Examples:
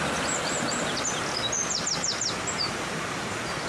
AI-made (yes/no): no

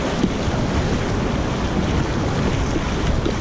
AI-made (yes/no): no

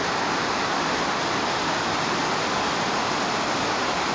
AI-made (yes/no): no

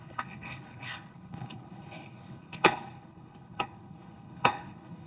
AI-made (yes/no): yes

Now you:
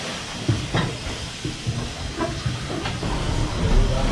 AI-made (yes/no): no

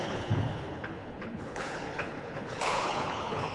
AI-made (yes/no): yes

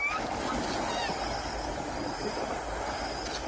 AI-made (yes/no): no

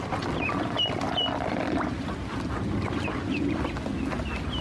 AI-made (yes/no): no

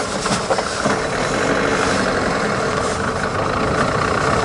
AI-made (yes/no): no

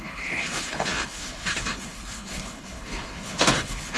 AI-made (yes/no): yes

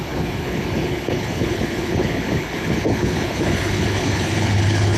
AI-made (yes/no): yes